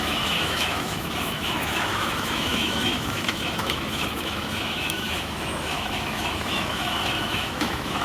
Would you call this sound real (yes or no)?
no